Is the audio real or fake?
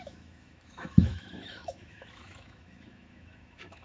fake